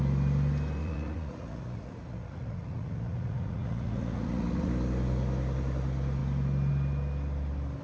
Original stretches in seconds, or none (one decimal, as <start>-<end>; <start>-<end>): 0.0-0.8; 4.7-7.8